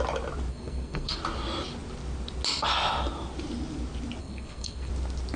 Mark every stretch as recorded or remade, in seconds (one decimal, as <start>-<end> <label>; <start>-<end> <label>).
0.0-0.5 recorded; 0.5-1.2 remade; 1.2-4.2 recorded; 4.2-4.9 remade; 4.9-5.4 recorded